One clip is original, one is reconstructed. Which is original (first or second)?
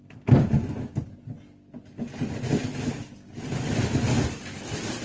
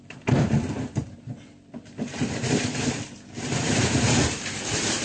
first